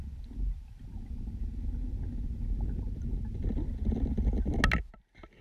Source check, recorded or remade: recorded